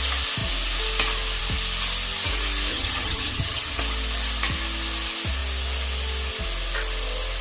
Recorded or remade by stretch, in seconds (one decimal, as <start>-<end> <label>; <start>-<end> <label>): 0.0-2.7 recorded; 2.7-3.8 remade; 3.8-7.4 recorded